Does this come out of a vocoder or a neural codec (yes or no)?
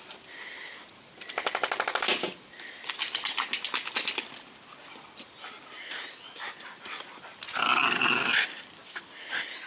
no